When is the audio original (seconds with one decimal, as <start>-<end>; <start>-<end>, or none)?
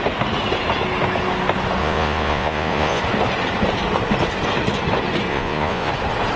0.0-1.8; 3.0-5.3; 5.9-6.4